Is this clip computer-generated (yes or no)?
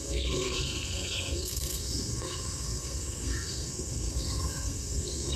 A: yes